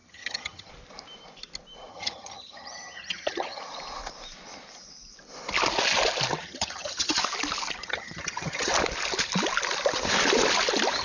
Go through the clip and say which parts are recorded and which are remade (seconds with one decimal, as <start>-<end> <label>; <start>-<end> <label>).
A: 0.0-0.7 remade; 0.7-1.9 recorded; 1.9-3.6 remade; 3.6-6.4 recorded; 6.4-7.2 remade; 7.2-7.8 recorded; 7.8-8.7 remade; 8.7-11.0 recorded